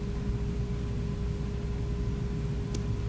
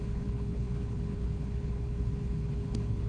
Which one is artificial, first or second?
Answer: second